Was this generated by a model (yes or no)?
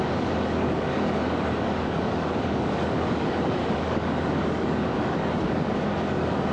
yes